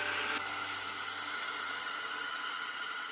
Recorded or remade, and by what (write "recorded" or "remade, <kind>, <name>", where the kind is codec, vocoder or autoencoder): recorded